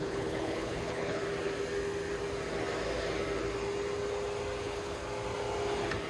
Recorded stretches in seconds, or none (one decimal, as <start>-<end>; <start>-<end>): 1.2-4.6; 5.0-6.1